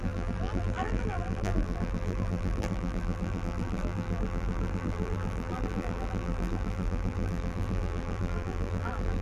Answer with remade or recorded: remade